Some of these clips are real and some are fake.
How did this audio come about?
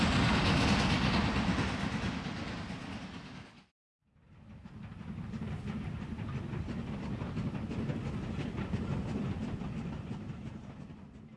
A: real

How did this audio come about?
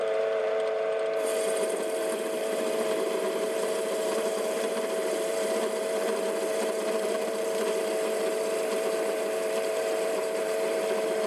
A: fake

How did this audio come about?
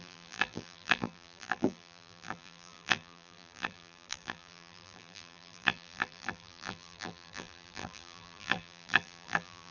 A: fake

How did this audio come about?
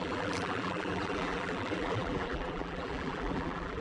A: fake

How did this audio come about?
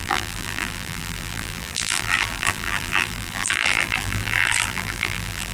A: fake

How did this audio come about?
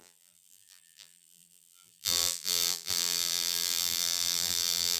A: fake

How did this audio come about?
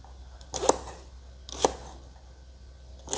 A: real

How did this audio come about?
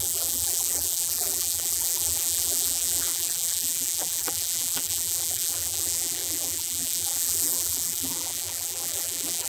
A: fake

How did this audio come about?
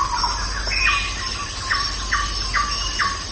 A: real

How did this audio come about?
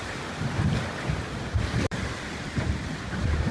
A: fake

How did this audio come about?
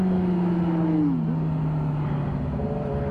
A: real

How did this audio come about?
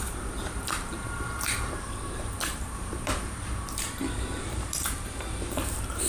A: fake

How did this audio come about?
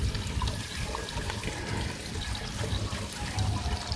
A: fake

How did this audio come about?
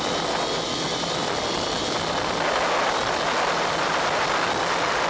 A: real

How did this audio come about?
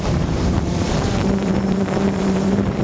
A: fake